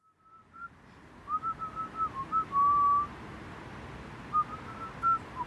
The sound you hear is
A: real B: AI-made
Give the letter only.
A